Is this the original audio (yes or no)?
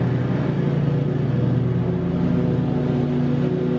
yes